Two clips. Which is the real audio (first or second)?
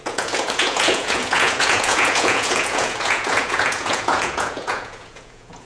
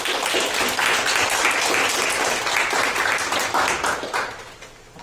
second